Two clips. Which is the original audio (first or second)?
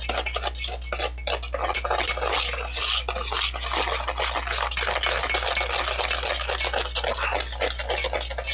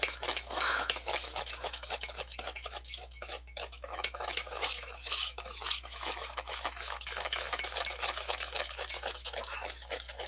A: first